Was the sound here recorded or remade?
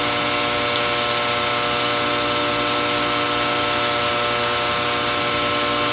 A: recorded